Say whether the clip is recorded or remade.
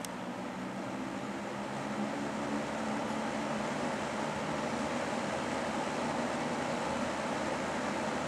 recorded